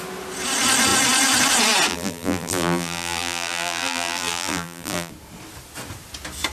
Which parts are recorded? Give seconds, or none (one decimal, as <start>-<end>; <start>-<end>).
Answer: 0.0-1.9; 5.1-6.5